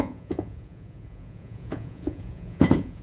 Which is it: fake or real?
fake